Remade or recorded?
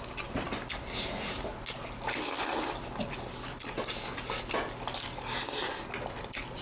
recorded